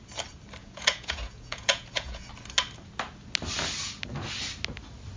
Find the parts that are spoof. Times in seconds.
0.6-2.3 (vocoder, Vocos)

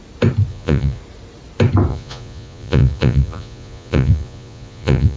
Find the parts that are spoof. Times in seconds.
0.5-1.0 (vocoder, Vocos); 1.9-5.2

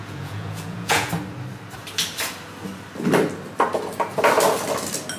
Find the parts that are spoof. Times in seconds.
0.0-1.1 (vocoder, Vocos)

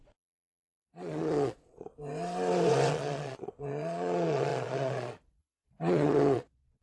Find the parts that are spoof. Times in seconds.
0.0-1.9 (vocoder, Vocos); 2.9-6.8

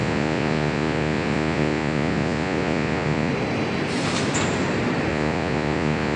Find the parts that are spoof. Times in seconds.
0.0-3.3 (vocoder, Vocos); 5.1-6.2

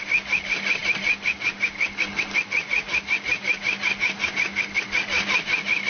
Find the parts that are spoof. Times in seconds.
none